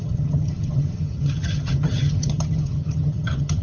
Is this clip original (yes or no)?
no